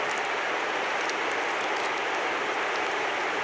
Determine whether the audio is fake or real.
real